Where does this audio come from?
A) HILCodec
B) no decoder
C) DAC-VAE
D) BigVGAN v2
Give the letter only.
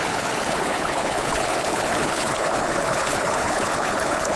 A